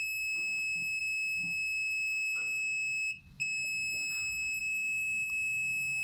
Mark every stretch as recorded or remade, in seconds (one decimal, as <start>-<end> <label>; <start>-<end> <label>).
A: 0.0-6.0 recorded